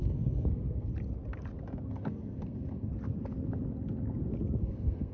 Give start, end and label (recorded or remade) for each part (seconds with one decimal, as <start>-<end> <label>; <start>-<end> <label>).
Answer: 0.0-0.9 remade; 0.9-1.9 recorded; 1.9-2.9 remade; 2.9-4.6 recorded; 4.6-5.1 remade